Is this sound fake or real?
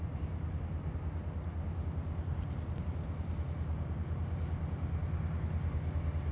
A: real